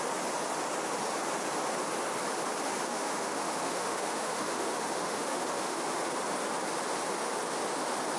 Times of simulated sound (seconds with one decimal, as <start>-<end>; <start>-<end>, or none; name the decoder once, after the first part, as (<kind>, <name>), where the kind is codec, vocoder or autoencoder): 2.9-5.8 (autoencoder, DAC-VAE)